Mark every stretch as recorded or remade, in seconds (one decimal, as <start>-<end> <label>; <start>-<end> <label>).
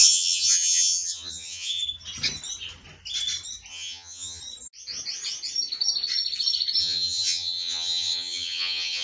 0.0-1.8 remade; 1.8-3.7 recorded; 3.7-4.4 remade; 4.4-6.8 recorded; 6.8-9.0 remade